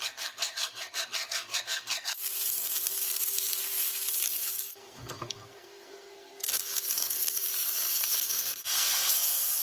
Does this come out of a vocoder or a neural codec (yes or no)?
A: yes